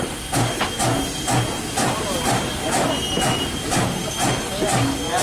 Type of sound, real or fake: real